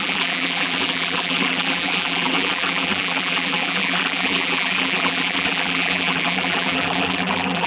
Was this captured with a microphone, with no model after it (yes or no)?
no